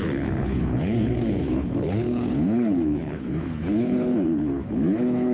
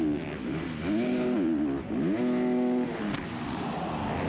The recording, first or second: second